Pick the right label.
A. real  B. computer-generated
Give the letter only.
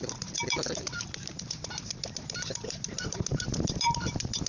B